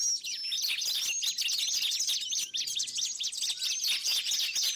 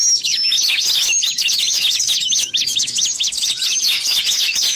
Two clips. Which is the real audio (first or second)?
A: first